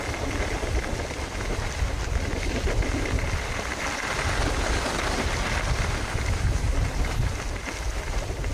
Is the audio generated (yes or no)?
no